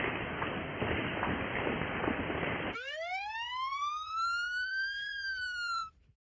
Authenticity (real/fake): fake